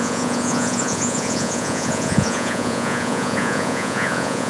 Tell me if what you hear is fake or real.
fake